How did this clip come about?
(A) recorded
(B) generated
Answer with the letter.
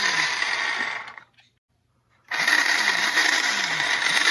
B